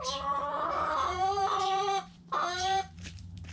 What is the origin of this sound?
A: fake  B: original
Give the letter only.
A